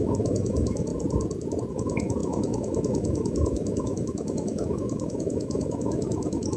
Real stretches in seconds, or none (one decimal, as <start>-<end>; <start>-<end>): 0.9-1.7